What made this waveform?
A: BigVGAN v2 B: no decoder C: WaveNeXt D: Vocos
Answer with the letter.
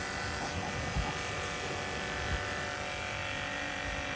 B